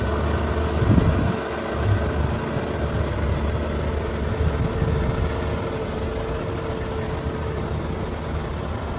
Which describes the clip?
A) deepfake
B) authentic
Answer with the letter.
B